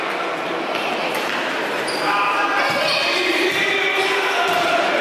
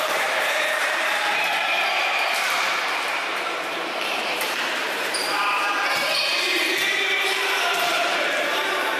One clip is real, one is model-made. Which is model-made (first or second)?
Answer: second